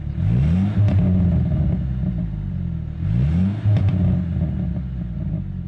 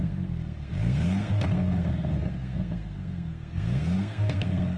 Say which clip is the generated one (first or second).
second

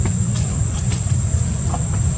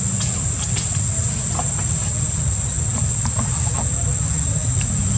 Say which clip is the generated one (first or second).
first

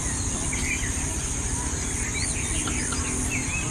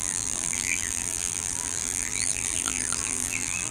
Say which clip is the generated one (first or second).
second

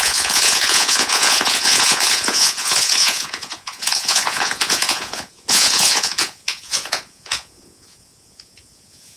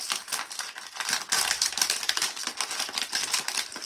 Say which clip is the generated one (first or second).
first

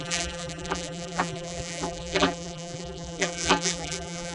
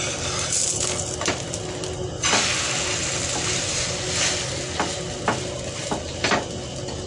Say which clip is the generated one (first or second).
first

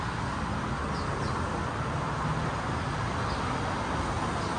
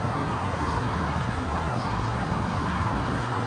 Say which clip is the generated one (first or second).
second